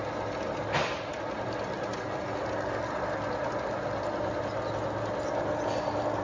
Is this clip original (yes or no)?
yes